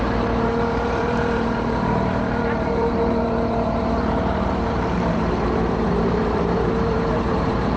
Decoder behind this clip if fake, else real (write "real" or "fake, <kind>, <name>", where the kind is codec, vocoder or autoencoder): fake, vocoder, BigVGAN v2